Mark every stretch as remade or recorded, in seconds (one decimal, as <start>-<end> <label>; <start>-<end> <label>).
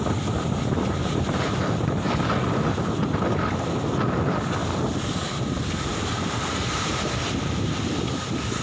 0.0-1.0 recorded; 1.0-2.1 remade; 2.1-5.9 recorded; 5.9-7.1 remade; 7.1-8.6 recorded